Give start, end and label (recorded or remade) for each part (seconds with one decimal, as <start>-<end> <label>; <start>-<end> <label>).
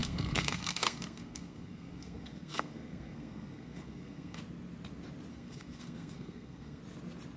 0.0-4.4 remade; 4.4-5.3 recorded; 5.3-6.8 remade; 6.8-7.4 recorded